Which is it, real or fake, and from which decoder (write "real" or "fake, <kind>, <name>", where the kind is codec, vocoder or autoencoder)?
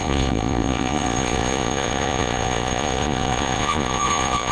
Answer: fake, vocoder, Vocos